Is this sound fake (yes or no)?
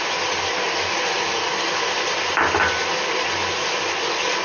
no